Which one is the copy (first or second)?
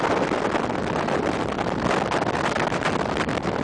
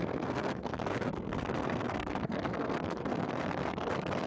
second